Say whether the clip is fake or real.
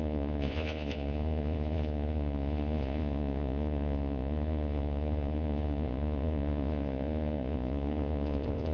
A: fake